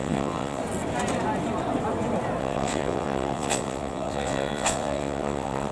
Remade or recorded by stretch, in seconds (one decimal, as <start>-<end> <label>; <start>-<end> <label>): 0.0-0.6 remade; 0.6-2.4 recorded; 2.4-5.7 remade